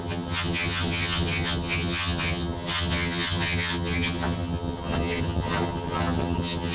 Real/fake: fake